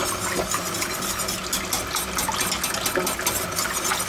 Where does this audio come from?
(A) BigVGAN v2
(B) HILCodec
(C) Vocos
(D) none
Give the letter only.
D